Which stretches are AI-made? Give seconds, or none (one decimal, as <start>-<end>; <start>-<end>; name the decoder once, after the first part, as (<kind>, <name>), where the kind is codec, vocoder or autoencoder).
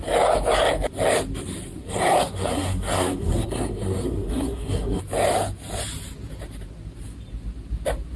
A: 1.8-5.0 (codec, SNAC)